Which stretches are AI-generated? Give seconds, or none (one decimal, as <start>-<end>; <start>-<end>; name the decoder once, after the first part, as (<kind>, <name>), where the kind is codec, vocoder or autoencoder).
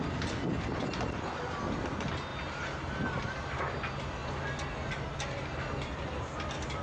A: none